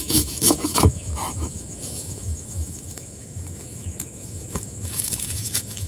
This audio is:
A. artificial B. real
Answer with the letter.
A